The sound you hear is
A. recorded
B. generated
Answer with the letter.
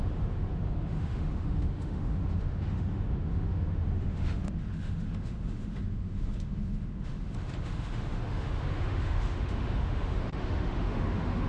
B